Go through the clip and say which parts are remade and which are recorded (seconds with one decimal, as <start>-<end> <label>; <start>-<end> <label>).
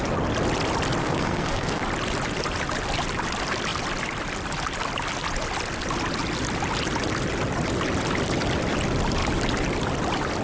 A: 0.0-1.0 recorded; 1.0-1.8 remade; 1.8-10.4 recorded